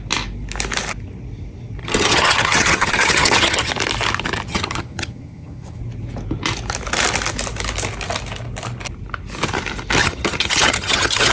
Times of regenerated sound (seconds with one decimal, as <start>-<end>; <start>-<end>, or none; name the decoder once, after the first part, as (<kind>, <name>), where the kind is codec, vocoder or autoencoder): 1.8-3.7 (vocoder, HiFi-GAN); 4.5-5.8; 10.0-11.3